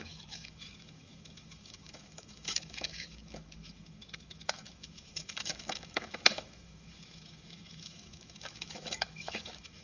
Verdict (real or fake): fake